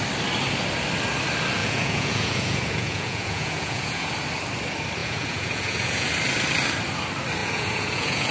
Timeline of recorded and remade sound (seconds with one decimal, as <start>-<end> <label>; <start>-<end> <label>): 0.0-1.6 recorded; 1.6-4.1 remade; 4.1-5.0 recorded; 5.0-6.1 remade; 6.1-7.4 recorded; 7.4-8.3 remade